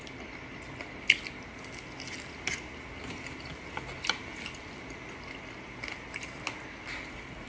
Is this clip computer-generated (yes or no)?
no